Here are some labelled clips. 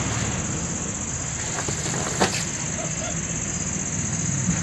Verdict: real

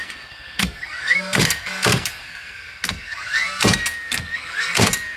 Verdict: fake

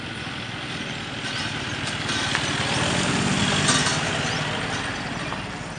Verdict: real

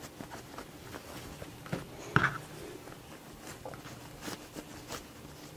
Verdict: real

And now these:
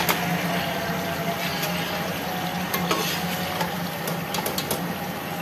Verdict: real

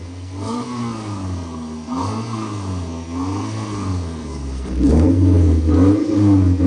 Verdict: fake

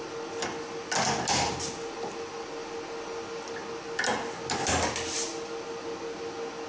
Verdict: real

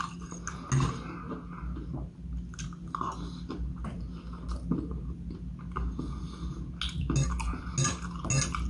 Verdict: real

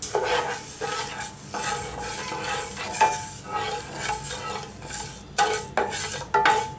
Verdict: real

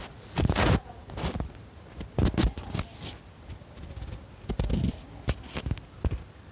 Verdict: real